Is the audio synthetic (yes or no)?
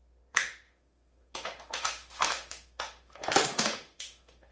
yes